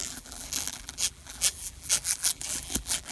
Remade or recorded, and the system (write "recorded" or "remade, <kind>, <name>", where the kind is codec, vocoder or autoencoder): remade, vocoder, BigVGAN v2